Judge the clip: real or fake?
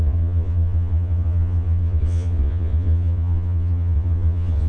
fake